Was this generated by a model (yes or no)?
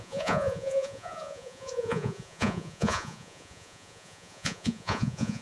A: yes